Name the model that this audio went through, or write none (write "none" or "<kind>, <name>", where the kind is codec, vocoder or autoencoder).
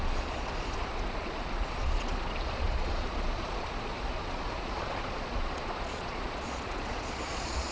vocoder, Vocos